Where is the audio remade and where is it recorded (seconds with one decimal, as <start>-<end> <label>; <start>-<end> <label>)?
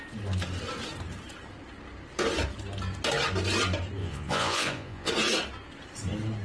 0.0-4.0 recorded; 4.0-5.1 remade; 5.1-6.4 recorded